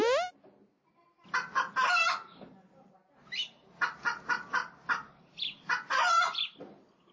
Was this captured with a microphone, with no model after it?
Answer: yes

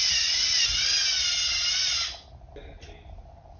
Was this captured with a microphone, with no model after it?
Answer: yes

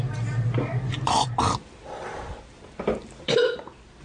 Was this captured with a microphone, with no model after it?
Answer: no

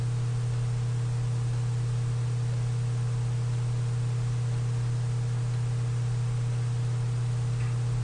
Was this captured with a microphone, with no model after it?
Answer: yes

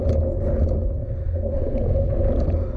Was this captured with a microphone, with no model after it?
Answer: yes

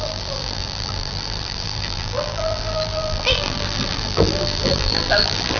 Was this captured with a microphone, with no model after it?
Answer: no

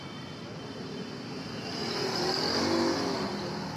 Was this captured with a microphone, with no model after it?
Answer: yes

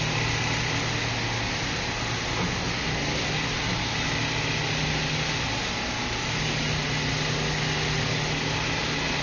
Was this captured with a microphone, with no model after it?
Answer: yes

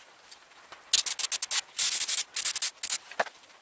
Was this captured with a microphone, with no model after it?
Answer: yes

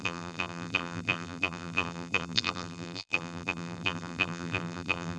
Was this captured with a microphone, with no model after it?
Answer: no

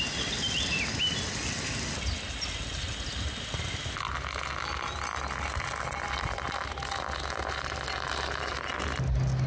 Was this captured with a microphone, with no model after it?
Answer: yes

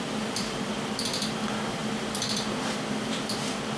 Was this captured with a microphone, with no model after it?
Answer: no